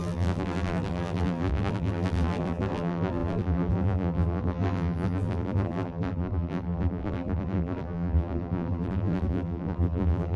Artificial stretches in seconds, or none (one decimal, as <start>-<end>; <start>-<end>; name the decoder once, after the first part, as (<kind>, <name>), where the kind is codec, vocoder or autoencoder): 0.0-10.4 (vocoder, BigVGAN v2)